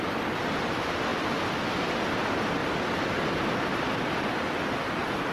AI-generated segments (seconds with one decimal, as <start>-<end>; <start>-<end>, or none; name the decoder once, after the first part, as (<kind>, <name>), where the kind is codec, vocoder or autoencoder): none